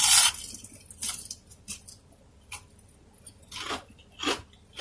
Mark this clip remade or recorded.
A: recorded